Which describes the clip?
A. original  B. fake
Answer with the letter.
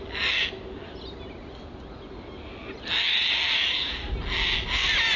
A